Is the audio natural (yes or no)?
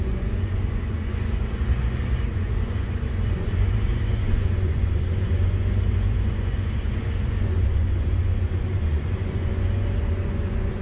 no